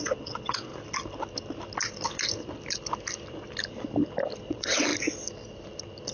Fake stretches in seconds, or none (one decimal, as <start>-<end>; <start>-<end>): 0.0-0.7; 4.4-4.9